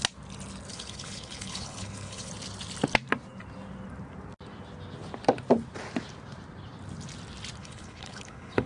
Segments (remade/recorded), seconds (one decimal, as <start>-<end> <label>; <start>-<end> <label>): 0.0-0.7 recorded; 0.7-2.3 remade; 2.3-7.6 recorded; 7.6-8.7 remade